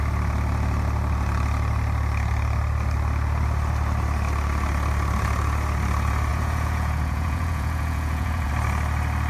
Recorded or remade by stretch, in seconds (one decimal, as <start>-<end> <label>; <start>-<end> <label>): 0.0-6.3 recorded; 6.3-8.5 remade; 8.5-9.3 recorded